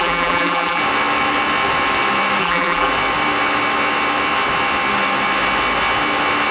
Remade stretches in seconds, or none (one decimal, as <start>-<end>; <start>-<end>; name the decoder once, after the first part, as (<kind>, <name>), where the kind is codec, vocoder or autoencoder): 0.0-0.8 (vocoder, BigVGAN v2); 2.4-2.9